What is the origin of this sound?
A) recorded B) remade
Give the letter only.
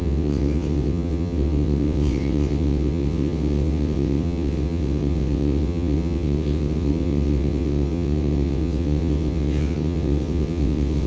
B